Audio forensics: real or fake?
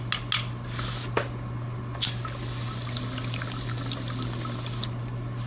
real